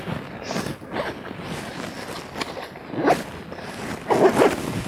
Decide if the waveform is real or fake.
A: real